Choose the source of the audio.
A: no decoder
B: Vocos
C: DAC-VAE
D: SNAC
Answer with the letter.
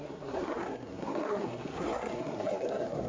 D